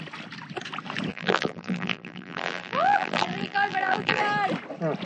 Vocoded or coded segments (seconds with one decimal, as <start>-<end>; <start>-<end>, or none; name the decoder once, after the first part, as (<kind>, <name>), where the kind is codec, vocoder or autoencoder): 1.1-4.2 (vocoder, BigVGAN v2)